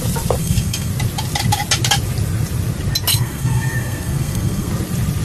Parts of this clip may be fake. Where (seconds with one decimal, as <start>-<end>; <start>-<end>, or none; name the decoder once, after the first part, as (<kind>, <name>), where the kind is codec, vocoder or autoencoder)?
0.4-0.9 (codec, SNAC); 3.1-4.7